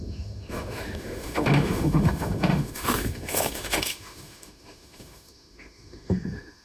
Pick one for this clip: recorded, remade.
remade